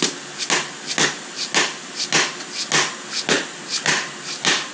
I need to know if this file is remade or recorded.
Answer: recorded